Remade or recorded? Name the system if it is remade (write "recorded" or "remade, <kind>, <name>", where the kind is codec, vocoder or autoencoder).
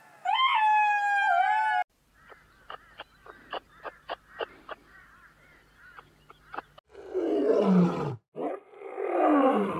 recorded